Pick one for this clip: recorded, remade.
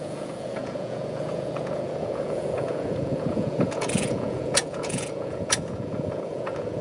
remade